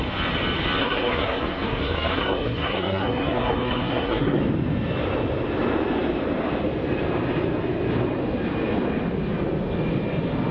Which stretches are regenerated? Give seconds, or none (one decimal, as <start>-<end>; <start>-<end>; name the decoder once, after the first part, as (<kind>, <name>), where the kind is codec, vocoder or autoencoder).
0.8-4.4 (codec, SNAC)